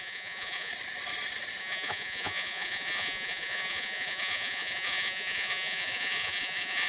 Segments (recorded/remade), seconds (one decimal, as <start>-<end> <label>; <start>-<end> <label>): 0.0-0.7 remade; 0.7-1.6 recorded; 1.6-6.9 remade